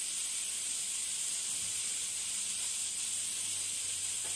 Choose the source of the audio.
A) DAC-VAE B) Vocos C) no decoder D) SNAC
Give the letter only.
C